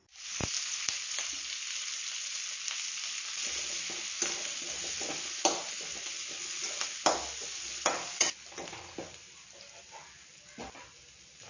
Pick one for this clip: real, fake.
real